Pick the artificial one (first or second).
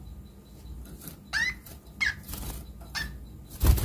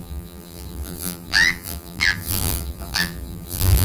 second